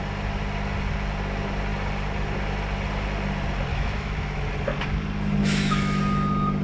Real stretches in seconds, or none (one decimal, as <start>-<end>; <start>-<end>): 0.0-3.7; 4.5-5.4; 6.0-6.6